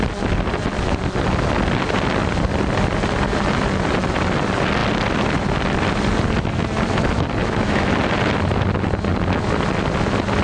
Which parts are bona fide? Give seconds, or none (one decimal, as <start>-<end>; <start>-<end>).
0.0-7.4; 7.9-10.4